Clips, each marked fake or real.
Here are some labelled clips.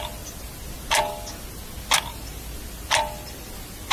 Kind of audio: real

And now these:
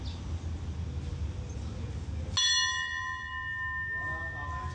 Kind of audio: real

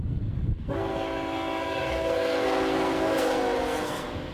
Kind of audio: fake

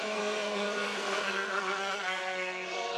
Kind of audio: fake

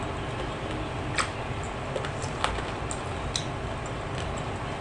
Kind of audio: real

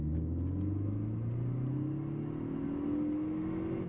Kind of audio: real